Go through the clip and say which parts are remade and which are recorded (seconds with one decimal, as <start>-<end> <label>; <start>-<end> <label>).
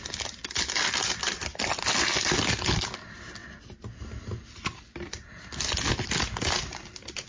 0.0-7.3 recorded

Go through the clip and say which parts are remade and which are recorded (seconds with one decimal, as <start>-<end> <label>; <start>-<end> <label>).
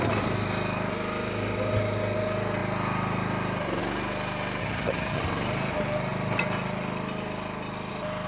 0.0-4.6 recorded; 4.6-5.2 remade; 5.2-8.3 recorded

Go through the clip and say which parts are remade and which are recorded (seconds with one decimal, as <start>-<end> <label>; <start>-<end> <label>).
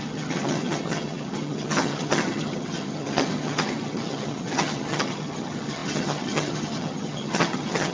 0.0-7.9 remade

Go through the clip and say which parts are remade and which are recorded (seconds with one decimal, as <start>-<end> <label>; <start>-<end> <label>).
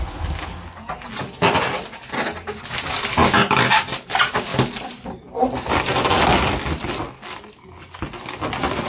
0.0-8.9 recorded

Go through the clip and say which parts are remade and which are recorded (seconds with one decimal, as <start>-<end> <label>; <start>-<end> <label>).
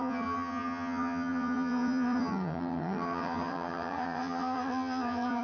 0.0-5.4 remade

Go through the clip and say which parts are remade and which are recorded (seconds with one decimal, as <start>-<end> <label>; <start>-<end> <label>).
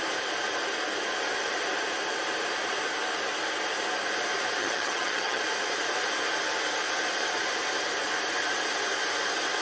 0.0-4.6 recorded; 4.6-5.4 remade; 5.4-9.6 recorded